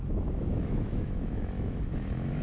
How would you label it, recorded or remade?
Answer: remade